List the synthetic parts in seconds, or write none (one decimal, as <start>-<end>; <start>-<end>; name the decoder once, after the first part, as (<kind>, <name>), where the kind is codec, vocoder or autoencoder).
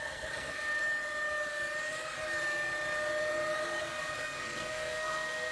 0.0-0.8 (codec, SNAC); 3.8-5.5